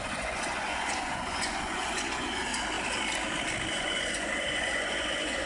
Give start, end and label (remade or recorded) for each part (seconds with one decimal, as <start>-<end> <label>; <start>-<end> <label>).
0.0-2.5 remade; 2.5-3.7 recorded; 3.7-5.5 remade